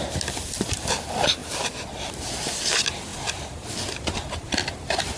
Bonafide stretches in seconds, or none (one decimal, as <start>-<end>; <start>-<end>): 0.0-5.2